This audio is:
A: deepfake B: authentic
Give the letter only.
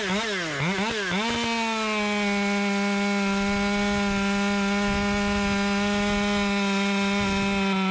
B